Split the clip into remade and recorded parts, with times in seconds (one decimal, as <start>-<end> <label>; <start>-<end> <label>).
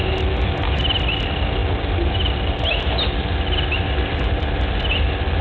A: 0.0-5.4 recorded